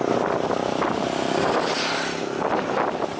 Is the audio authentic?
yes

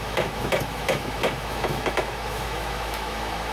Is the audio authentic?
no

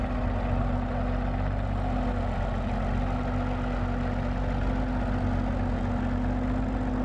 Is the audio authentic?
yes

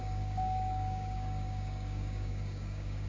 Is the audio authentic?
no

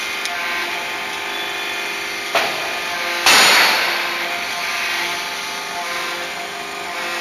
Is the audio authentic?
yes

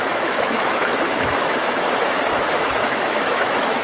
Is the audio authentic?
no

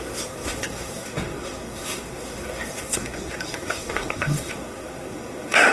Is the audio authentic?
no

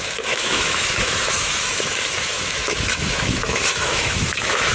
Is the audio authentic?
no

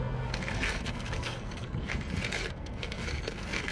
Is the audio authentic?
no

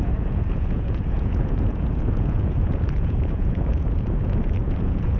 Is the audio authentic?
no